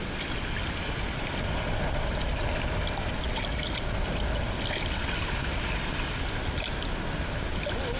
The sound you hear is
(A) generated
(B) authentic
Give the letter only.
B